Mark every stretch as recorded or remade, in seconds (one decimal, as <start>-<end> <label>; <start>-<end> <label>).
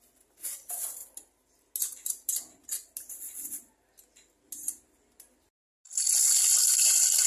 0.0-7.3 recorded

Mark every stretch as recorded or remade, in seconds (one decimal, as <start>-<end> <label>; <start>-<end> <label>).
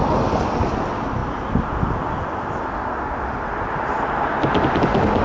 0.0-5.2 recorded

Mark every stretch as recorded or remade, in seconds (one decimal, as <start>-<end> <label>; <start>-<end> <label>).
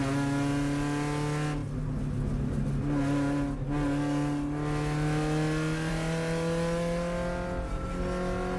0.0-8.6 recorded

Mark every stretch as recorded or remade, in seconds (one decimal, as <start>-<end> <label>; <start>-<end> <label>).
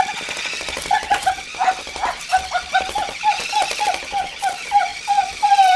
0.0-4.9 recorded; 4.9-5.8 remade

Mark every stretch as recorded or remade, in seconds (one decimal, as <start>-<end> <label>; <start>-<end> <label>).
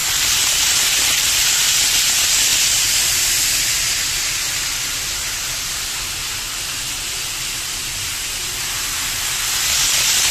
0.0-1.4 remade; 1.4-10.3 recorded